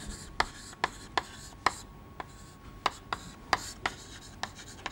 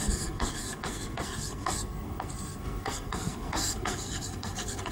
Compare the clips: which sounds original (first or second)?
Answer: first